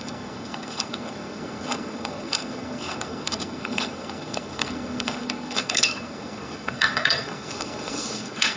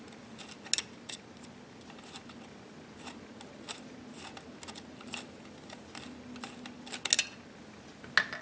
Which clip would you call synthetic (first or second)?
first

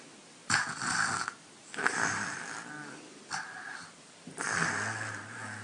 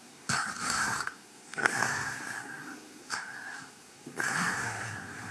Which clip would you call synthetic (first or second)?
second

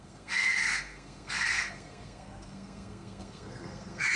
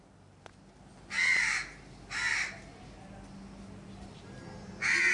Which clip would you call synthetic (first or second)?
first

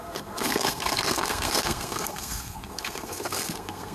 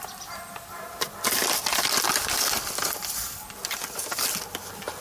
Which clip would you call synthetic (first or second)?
first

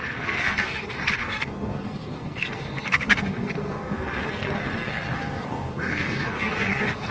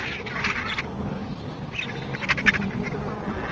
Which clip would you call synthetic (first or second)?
first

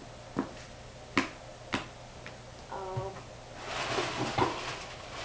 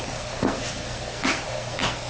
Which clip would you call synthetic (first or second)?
second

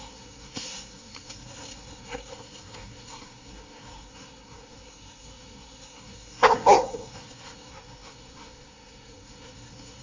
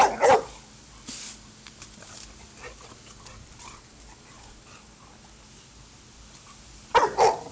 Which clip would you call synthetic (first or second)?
first